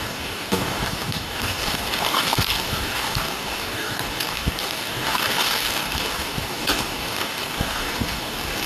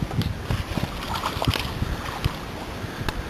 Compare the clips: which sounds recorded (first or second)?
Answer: second